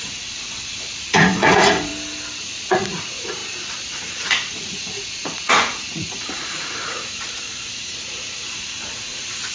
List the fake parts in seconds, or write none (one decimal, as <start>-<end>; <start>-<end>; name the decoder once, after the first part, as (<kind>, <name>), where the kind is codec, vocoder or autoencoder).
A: 0.0-1.9 (vocoder, Vocos); 2.4-3.4; 3.9-9.5